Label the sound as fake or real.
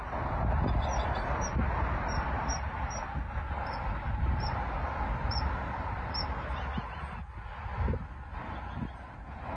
real